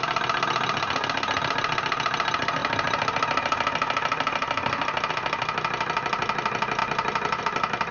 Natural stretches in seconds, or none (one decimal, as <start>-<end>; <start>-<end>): 0.0-7.9